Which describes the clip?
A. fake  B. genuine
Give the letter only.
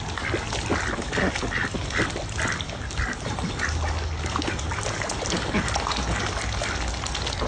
B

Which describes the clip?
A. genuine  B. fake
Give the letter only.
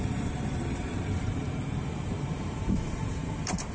B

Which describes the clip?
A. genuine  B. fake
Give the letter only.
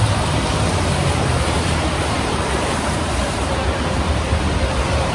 B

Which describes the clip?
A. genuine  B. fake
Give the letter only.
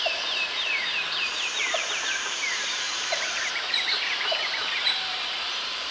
B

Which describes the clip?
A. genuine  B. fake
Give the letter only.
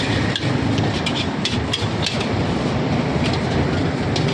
B